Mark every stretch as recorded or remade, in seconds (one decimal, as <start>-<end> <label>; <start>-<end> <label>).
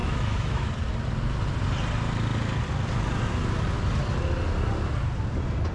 0.0-0.7 remade; 0.7-5.7 recorded